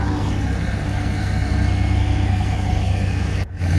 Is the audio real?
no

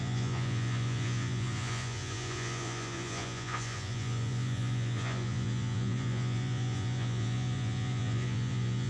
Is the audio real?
no